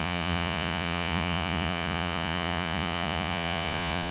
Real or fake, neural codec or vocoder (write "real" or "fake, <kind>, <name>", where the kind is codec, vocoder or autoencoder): fake, vocoder, Vocos